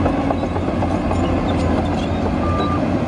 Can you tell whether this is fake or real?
real